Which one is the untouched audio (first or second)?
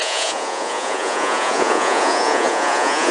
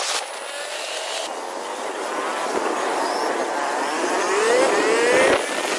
second